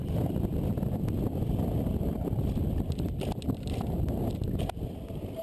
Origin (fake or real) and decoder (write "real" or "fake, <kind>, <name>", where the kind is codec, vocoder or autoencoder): real